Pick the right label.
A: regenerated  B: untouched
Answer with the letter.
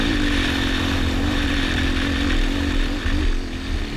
B